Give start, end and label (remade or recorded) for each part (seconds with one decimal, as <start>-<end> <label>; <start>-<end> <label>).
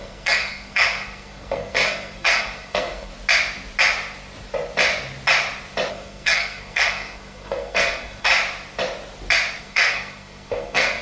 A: 0.0-3.1 remade; 3.1-5.9 recorded; 5.9-8.3 remade; 8.3-9.6 recorded; 9.6-11.0 remade